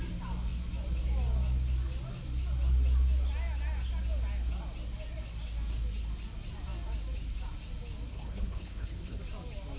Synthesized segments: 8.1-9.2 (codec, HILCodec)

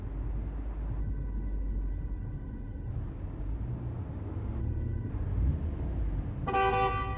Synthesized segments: 1.0-2.9 (codec, HILCodec); 4.6-5.1

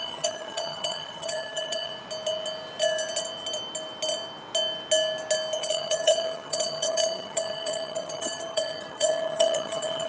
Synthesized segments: 0.0-1.9 (vocoder, HiFi-GAN); 5.6-10.1

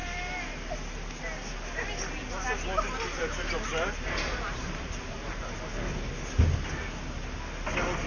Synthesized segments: 3.2-5.3 (vocoder, BigVGAN v2)

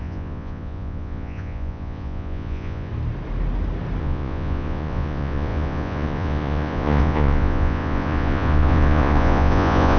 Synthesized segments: 0.0-2.9 (vocoder, Vocos); 4.0-10.0